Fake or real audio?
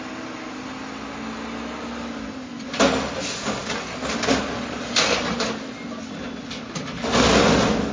real